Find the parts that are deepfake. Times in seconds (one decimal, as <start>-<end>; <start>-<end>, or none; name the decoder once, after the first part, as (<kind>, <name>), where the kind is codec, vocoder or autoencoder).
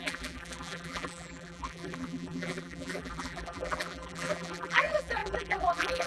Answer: 0.0-6.1 (vocoder, BigVGAN v2)